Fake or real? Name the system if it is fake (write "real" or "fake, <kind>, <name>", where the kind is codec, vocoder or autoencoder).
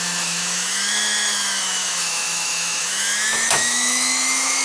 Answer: fake, autoencoder, DAC-VAE